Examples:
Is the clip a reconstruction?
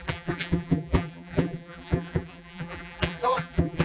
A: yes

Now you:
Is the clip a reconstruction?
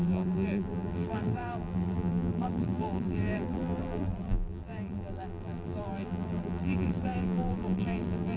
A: yes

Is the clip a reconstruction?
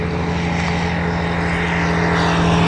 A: no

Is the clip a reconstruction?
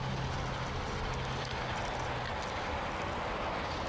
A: no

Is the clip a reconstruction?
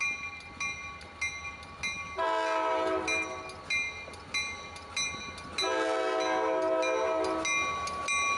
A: no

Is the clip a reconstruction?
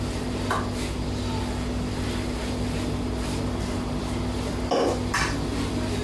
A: yes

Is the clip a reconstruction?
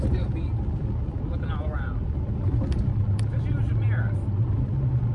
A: no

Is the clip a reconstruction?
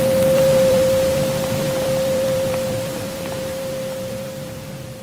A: yes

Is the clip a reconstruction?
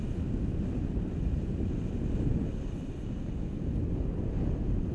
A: no